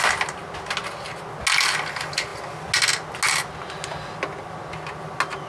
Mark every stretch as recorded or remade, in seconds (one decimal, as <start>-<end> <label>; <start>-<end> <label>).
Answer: 0.0-5.5 recorded